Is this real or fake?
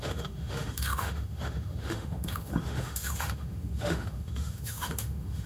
fake